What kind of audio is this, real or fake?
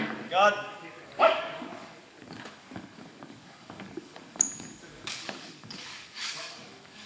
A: fake